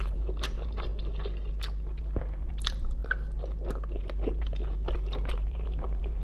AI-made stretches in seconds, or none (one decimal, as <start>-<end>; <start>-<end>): 0.0-0.9; 2.0-3.0; 4.0-6.2